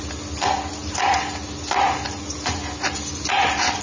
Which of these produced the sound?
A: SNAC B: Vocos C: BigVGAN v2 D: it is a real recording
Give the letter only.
D